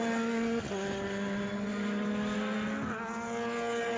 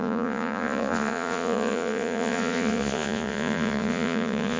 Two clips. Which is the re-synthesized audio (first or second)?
second